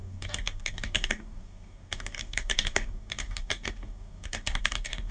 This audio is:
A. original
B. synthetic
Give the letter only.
B